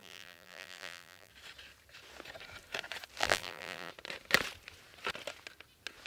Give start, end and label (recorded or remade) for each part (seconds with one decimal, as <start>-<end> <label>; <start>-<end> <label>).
0.0-1.3 remade; 1.3-3.2 recorded; 3.2-3.9 remade; 3.9-6.1 recorded